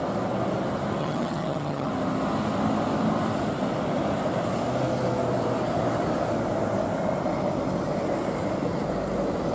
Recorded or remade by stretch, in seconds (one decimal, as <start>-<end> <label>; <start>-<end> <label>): 0.0-1.0 recorded; 1.0-1.9 remade; 1.9-9.5 recorded